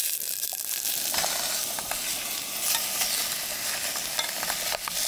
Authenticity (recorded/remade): recorded